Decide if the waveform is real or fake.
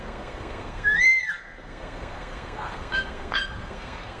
fake